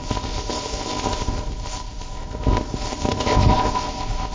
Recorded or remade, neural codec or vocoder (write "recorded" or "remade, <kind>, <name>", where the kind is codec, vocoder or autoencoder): remade, codec, ZipCodec